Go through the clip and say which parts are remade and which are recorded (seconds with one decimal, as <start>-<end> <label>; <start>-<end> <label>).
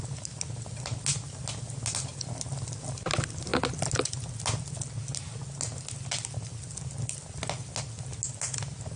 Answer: 0.0-9.0 recorded